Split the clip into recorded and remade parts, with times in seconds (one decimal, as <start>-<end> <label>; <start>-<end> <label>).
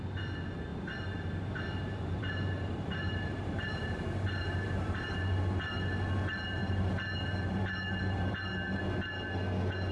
0.0-0.7 recorded; 0.7-5.2 remade; 5.2-6.6 recorded; 6.6-8.8 remade; 8.8-9.9 recorded